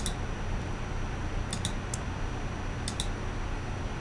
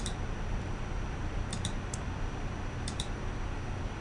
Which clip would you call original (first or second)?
first